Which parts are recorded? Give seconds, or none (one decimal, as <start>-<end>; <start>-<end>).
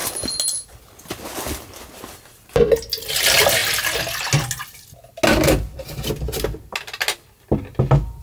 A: 0.0-8.2